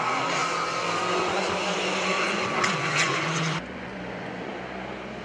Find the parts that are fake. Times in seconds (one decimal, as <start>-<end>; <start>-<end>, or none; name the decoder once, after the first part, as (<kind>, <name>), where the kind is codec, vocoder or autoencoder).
2.1-4.5 (vocoder, Vocos)